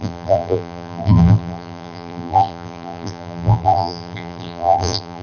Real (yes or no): no